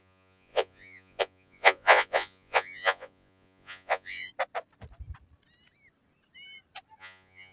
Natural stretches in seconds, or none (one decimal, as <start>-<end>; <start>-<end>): 4.3-7.0